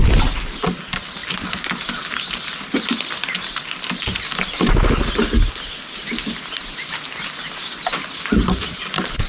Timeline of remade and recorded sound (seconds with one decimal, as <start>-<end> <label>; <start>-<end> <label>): 0.0-9.3 recorded